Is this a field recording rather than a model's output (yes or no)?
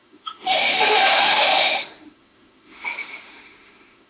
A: no